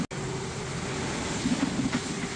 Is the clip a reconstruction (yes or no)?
no